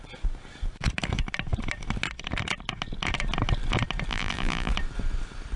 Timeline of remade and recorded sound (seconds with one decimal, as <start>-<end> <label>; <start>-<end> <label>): 0.0-4.1 recorded; 4.1-4.7 remade; 4.7-5.6 recorded